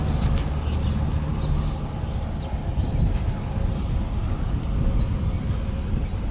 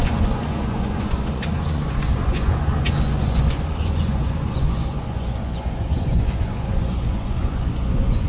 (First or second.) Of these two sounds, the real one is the first